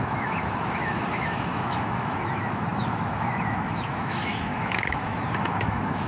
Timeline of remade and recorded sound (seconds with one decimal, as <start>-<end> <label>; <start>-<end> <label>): 0.0-6.1 remade